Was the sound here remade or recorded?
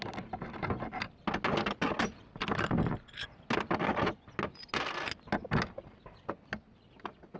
recorded